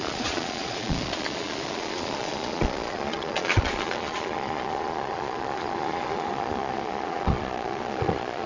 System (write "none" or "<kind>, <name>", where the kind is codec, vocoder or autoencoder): vocoder, Vocos